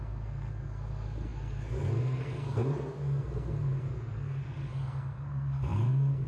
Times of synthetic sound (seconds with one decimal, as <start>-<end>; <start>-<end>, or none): 0.0-6.3